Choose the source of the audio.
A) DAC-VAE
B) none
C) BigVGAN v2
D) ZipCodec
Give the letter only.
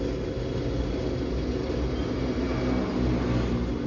B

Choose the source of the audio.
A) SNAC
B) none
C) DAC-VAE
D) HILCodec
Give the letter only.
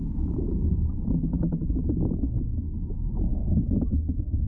B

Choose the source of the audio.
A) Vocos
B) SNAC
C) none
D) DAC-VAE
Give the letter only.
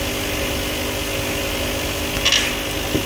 C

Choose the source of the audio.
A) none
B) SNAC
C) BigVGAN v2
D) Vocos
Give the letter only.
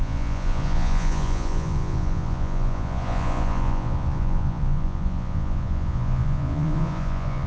D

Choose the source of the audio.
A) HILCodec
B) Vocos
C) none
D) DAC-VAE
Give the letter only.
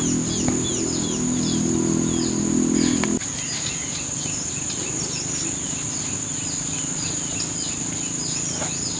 C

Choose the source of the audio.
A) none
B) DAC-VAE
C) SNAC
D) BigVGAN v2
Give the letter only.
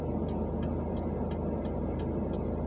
A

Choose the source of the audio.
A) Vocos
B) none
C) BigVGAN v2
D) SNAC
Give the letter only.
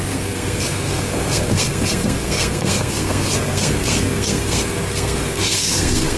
D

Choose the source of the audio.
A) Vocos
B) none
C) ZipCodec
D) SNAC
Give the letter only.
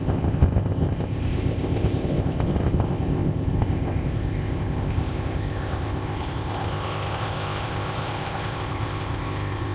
C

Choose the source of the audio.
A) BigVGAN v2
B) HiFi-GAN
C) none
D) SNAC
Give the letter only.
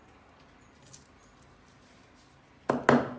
C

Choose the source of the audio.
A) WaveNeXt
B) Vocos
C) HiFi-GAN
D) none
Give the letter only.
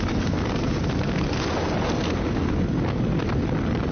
D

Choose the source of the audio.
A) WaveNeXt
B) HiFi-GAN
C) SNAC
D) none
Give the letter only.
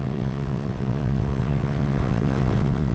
A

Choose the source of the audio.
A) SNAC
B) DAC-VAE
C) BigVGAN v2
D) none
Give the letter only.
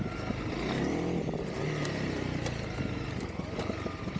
D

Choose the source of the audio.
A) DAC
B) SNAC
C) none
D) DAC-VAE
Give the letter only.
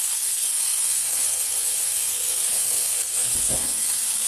B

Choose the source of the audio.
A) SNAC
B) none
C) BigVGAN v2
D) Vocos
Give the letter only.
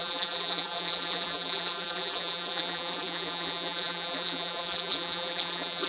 C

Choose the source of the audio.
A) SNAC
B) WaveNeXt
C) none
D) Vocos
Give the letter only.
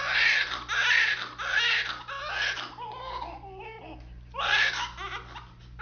C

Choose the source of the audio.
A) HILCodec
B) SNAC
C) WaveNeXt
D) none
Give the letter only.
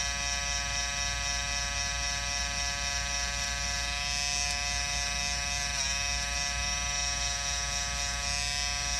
D